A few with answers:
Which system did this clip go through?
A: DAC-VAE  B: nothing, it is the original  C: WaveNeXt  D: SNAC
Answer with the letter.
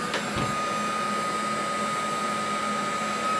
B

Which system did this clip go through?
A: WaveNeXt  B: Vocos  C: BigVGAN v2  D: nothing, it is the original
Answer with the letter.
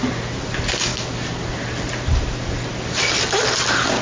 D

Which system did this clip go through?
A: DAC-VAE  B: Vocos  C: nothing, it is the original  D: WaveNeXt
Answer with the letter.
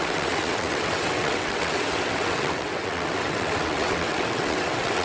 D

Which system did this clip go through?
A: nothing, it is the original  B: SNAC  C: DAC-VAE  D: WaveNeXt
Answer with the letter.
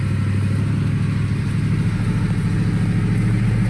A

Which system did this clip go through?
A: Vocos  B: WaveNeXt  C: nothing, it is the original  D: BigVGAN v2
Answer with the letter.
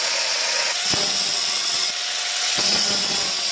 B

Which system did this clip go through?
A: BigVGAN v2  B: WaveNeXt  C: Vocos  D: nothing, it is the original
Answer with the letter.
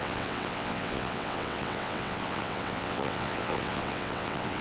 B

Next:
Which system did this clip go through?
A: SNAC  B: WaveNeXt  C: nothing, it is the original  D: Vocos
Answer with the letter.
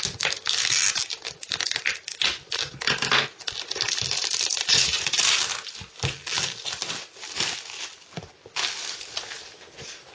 C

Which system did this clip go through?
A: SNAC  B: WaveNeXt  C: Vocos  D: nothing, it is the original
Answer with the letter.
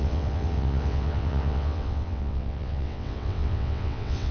B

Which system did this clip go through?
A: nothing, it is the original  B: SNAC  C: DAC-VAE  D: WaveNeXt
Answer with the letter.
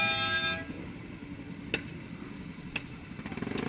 A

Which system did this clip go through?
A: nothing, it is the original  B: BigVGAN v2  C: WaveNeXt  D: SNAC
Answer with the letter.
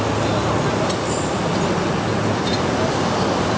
A